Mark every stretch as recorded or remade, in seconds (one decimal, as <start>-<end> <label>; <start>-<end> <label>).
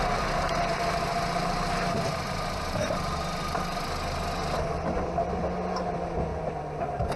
0.0-1.1 recorded; 1.1-3.0 remade; 3.0-6.3 recorded; 6.3-7.2 remade